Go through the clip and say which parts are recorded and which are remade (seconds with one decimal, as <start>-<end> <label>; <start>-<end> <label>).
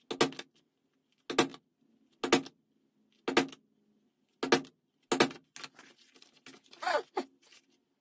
0.0-8.0 recorded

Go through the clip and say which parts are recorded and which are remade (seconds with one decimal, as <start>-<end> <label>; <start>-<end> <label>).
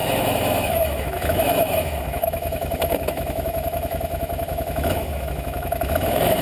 0.0-6.4 remade